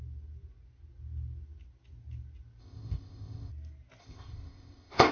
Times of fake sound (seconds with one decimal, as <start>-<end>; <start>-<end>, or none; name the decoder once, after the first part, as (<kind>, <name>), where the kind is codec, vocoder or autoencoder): 2.6-3.5 (codec, ZipCodec); 4.0-5.1